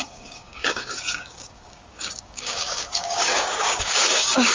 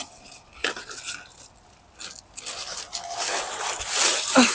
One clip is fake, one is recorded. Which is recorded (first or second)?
second